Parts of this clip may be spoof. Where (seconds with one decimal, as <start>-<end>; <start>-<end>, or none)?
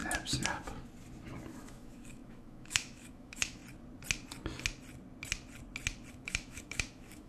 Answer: 1.5-3.6; 6.1-7.3